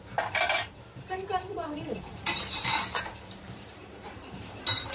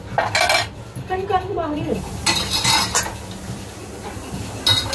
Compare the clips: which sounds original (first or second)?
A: second